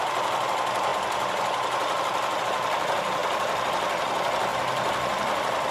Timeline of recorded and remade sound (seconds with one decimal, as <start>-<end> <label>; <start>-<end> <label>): 0.0-0.9 recorded; 0.9-2.4 remade; 2.4-3.2 recorded; 3.2-3.7 remade; 3.7-4.5 recorded; 4.5-5.7 remade